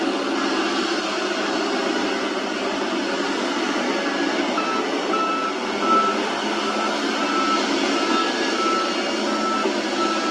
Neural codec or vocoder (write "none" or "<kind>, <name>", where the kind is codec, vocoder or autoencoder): none